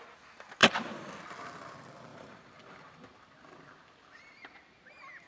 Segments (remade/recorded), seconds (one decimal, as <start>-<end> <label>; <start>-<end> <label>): 0.0-0.6 recorded; 0.6-1.1 remade; 1.1-2.1 recorded; 2.1-3.3 remade; 3.3-5.3 recorded